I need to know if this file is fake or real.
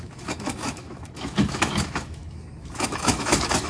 fake